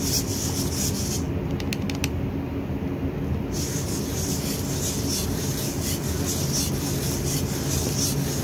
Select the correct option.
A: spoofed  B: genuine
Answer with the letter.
B